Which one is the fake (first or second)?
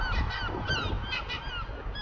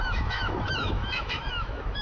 second